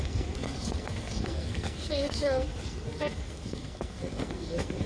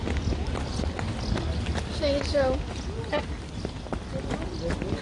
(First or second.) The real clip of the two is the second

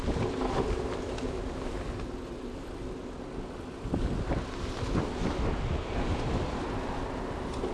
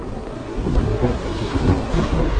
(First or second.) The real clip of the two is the first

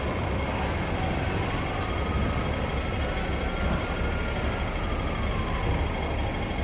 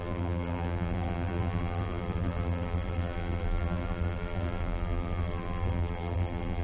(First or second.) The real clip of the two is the first